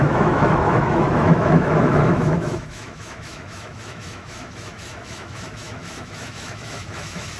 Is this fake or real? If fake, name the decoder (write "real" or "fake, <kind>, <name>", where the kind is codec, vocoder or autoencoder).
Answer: fake, autoencoder, DAC-VAE